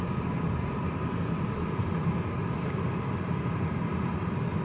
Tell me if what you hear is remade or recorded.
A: recorded